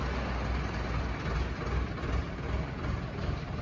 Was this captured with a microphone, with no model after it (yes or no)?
yes